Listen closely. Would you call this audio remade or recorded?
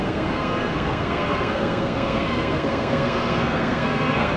remade